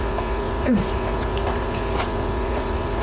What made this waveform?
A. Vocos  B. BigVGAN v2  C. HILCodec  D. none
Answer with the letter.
A